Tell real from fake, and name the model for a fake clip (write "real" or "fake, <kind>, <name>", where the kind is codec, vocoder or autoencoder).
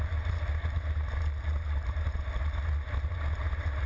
real